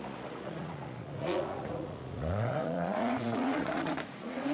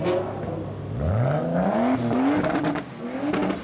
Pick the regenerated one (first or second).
first